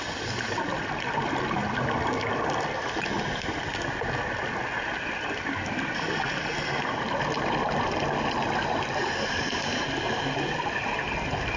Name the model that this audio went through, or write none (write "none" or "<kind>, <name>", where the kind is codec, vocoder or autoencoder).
none